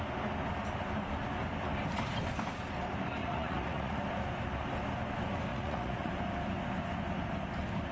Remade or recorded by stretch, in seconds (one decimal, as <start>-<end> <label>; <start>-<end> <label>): 0.0-3.2 recorded; 3.2-4.0 remade; 4.0-5.5 recorded; 5.5-6.1 remade; 6.1-7.9 recorded

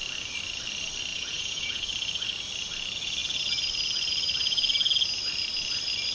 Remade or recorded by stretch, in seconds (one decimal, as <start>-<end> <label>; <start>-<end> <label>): 0.0-1.1 recorded; 1.1-1.8 remade; 1.8-6.1 recorded

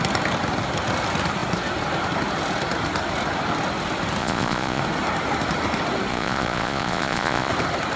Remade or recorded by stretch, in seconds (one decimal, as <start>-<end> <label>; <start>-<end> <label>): 0.0-4.2 recorded; 4.2-4.8 remade; 4.8-6.1 recorded; 6.1-7.5 remade; 7.5-8.0 recorded